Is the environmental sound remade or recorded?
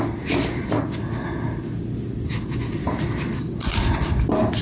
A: recorded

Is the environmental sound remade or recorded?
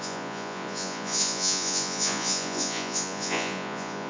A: remade